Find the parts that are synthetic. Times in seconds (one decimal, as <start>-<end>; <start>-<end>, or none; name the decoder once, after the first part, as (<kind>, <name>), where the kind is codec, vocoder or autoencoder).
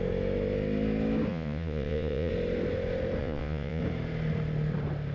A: 1.3-2.3 (vocoder, Vocos); 3.2-3.8